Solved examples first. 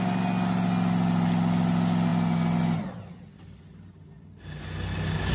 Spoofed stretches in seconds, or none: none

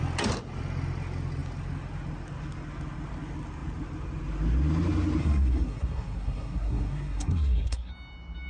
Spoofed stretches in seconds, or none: 5.2-7.9 (codec, SNAC)

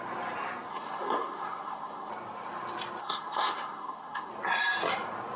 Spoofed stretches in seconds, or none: 0.7-2.1 (codec, SNAC); 3.0-4.3

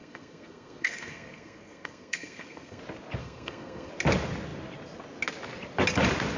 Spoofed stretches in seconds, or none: 0.0-2.8 (codec, SNAC); 3.2-3.9

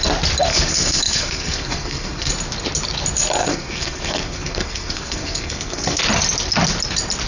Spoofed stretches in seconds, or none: 0.5-2.3 (codec, SNAC); 3.4-6.0

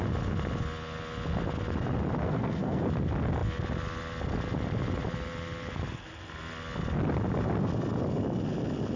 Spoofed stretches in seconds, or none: 2.2-2.8 (codec, SNAC)

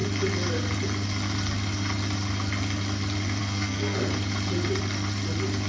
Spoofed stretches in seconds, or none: 3.4-4.0 (codec, SNAC)